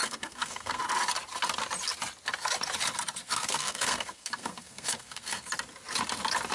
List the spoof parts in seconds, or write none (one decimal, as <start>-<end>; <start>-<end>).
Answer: 0.0-0.8; 3.2-5.5